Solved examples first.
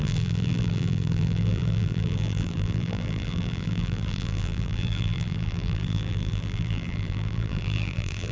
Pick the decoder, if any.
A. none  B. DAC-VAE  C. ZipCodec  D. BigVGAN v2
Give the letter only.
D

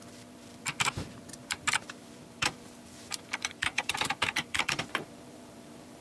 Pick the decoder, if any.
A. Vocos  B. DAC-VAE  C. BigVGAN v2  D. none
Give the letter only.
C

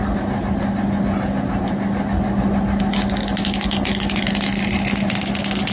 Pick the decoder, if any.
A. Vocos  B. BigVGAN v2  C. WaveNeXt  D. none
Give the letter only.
D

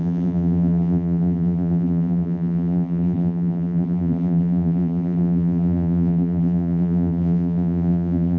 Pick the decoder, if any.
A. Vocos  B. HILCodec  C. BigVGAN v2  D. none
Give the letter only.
C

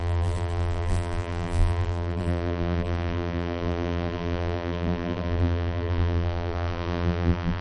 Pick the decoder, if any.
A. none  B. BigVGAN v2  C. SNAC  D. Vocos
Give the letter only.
B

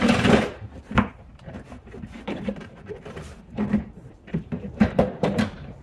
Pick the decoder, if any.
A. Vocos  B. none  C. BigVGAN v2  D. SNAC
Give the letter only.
C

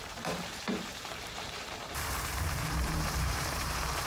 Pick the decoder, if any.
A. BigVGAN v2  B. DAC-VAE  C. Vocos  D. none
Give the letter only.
A